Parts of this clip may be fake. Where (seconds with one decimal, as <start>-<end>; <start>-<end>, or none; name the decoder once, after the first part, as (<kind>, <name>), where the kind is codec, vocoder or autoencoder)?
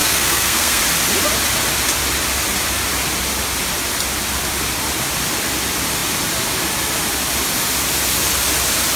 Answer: 0.0-0.8 (codec, SNAC)